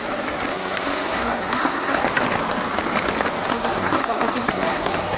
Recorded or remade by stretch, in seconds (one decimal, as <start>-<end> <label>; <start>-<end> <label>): 0.0-0.5 recorded; 0.5-2.0 remade; 2.0-3.5 recorded; 3.5-5.2 remade